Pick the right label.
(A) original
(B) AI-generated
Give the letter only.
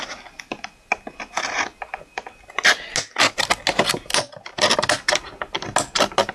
A